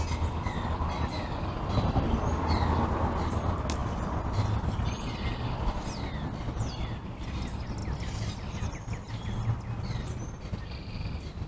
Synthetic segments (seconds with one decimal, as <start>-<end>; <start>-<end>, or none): none